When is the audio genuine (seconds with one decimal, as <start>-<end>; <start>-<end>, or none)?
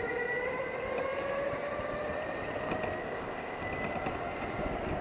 0.0-3.0; 3.6-5.0